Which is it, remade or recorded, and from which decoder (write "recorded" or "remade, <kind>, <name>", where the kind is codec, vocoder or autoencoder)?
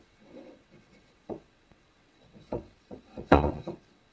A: remade, vocoder, WaveNeXt